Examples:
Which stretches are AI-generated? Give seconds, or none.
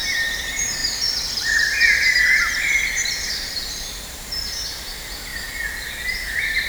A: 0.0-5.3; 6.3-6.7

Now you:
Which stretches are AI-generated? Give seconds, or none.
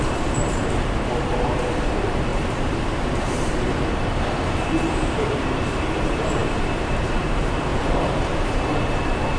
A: 0.0-9.4